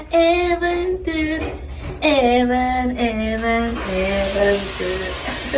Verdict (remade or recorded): recorded